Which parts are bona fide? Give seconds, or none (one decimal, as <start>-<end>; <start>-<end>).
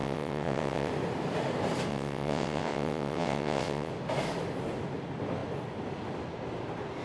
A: 0.9-1.9; 3.9-7.0